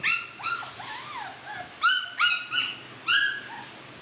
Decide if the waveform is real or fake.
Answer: real